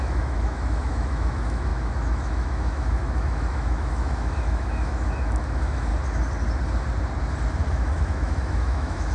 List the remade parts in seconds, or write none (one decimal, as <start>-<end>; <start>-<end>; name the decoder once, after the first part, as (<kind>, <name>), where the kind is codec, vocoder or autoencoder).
0.0-5.9 (autoencoder, DAC-VAE); 7.7-9.1